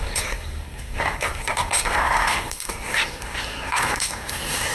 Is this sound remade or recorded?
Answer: remade